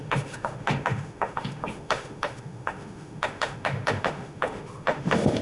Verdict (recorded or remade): remade